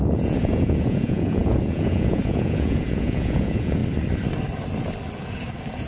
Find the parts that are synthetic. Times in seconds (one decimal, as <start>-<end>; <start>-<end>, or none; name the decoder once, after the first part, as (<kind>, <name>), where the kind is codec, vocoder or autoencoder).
0.0-3.8 (vocoder, Vocos)